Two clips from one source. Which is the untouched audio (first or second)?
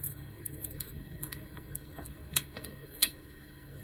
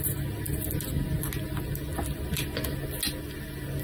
second